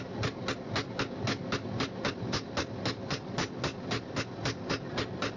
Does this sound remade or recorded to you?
recorded